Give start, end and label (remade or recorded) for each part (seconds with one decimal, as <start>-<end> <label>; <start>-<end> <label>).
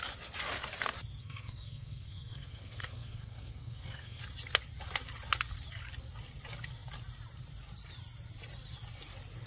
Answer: 0.0-1.2 recorded; 1.2-4.2 remade; 4.2-9.5 recorded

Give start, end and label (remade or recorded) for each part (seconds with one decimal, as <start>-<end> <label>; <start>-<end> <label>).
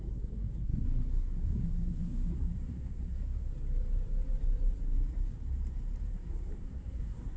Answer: 0.0-3.5 remade; 3.5-6.1 recorded; 6.1-7.4 remade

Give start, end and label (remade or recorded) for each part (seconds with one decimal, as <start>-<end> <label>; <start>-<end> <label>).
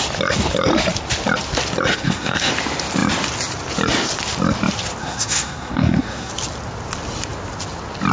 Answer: 0.0-1.9 recorded; 1.9-2.5 remade; 2.5-5.0 recorded; 5.0-6.3 remade; 6.3-8.1 recorded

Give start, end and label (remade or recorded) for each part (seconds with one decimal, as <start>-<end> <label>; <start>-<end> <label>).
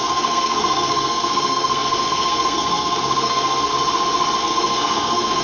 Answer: 0.0-3.7 remade; 3.7-4.4 recorded; 4.4-5.4 remade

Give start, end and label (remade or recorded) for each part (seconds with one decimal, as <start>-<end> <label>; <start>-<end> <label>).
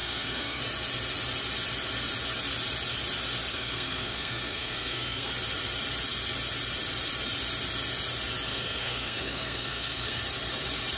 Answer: 0.0-0.6 remade; 0.6-3.5 recorded; 3.5-5.3 remade; 5.3-8.5 recorded; 8.5-10.2 remade; 10.2-11.0 recorded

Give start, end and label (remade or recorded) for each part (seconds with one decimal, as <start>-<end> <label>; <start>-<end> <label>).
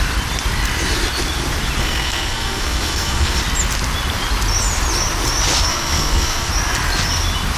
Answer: 0.0-1.8 recorded; 1.8-3.4 remade; 3.4-5.7 recorded; 5.7-6.5 remade; 6.5-7.6 recorded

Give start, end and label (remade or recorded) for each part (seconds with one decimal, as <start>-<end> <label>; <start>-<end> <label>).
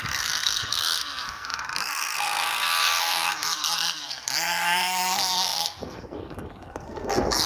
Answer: 0.0-7.5 remade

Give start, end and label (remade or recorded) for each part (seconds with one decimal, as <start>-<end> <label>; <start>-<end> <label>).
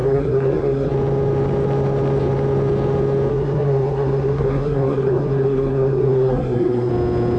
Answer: 0.0-0.9 remade; 0.9-3.3 recorded; 3.3-6.9 remade; 6.9-7.4 recorded